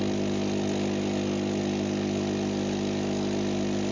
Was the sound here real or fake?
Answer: real